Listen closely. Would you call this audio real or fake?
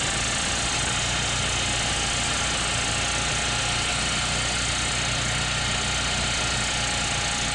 real